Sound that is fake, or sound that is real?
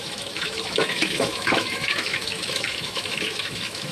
fake